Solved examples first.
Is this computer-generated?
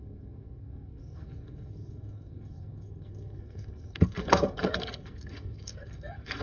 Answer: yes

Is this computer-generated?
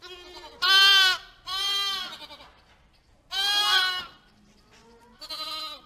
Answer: no